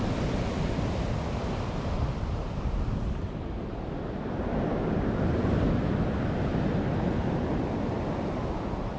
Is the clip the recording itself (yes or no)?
yes